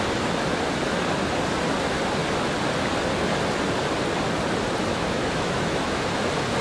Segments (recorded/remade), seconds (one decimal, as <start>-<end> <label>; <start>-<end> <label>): 0.0-4.9 recorded; 4.9-6.1 remade; 6.1-6.6 recorded